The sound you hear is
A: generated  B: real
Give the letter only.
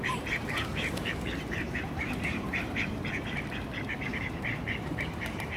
A